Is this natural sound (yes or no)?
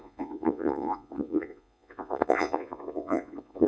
no